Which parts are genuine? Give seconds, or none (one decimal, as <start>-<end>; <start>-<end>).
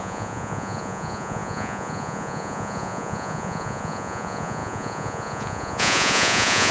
none